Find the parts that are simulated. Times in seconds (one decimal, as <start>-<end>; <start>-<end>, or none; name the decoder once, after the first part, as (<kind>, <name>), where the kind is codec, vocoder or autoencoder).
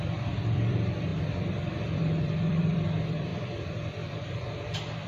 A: 0.0-5.1 (vocoder, BigVGAN v2)